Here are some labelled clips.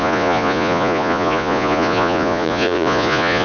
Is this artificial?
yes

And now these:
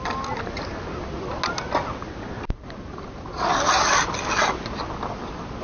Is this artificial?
no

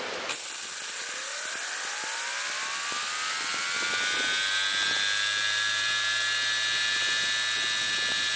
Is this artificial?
no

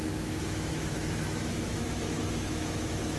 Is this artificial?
yes